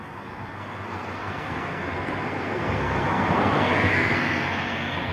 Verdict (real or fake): fake